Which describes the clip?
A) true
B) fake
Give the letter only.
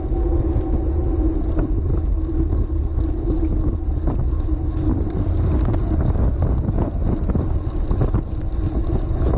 A